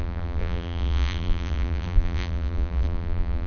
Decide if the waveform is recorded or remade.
remade